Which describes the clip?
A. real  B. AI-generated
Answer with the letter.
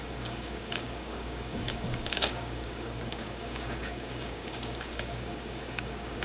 B